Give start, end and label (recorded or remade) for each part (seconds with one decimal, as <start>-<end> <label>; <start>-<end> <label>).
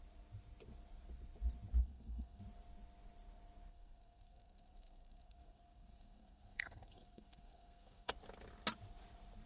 0.0-1.8 recorded; 1.8-2.4 remade; 2.4-3.7 recorded; 3.7-8.1 remade; 8.1-9.5 recorded